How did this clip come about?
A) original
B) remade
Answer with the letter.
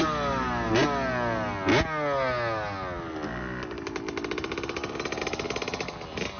A